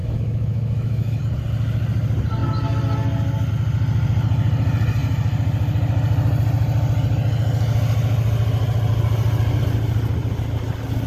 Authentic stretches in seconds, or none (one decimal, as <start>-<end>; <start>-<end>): 1.2-11.1